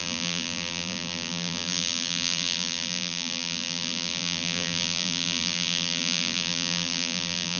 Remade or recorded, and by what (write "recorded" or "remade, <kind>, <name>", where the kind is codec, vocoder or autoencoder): remade, vocoder, BigVGAN v2